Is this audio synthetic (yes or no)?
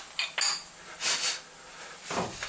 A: no